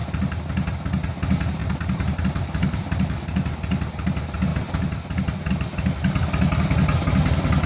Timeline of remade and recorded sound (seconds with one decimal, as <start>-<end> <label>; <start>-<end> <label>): 0.0-0.5 remade; 0.5-1.6 recorded; 1.6-2.2 remade; 2.2-7.7 recorded